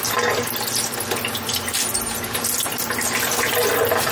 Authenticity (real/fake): real